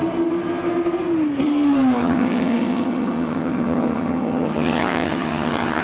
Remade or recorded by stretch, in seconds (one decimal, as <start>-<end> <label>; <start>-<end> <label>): 0.0-2.0 recorded; 2.0-5.8 remade